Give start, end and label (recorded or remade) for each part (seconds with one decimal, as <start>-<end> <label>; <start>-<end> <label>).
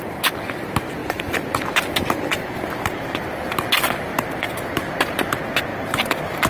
0.0-1.0 recorded; 1.0-1.6 remade; 1.6-2.3 recorded; 2.3-3.4 remade; 3.4-4.1 recorded; 4.1-5.3 remade; 5.3-5.7 recorded; 5.7-6.5 remade